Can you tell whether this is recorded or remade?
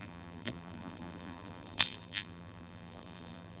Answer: remade